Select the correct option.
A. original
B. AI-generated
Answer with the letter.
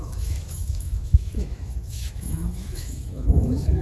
B